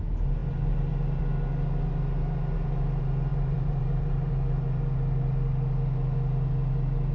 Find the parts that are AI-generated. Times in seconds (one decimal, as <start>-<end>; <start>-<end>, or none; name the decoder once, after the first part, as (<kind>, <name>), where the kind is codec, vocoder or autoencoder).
3.3-4.3 (vocoder, BigVGAN v2)